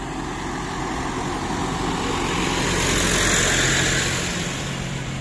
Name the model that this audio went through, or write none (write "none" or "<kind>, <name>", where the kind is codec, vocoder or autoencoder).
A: none